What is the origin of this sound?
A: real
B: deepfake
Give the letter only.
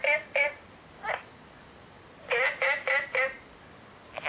A